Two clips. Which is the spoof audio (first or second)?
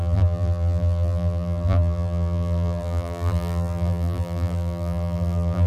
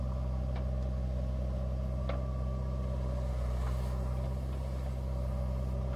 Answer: first